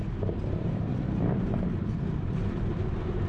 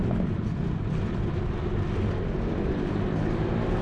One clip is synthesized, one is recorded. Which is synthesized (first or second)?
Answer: first